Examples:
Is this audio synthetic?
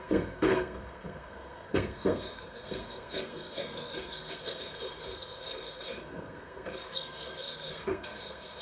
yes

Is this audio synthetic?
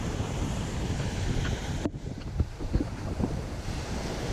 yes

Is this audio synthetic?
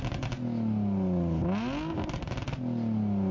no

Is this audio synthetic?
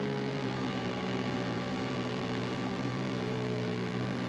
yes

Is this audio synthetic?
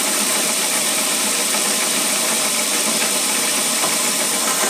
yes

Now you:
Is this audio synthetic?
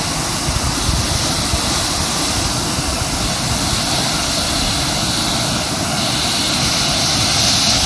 no